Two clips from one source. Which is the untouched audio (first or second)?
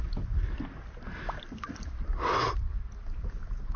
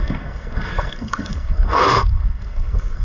first